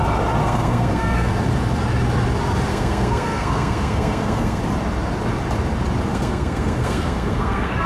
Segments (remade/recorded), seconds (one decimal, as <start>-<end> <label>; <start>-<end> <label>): 0.0-0.4 recorded; 0.4-1.3 remade; 1.3-2.7 recorded; 2.7-4.6 remade; 4.6-6.1 recorded; 6.1-7.9 remade